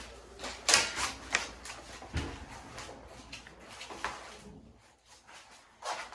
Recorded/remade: recorded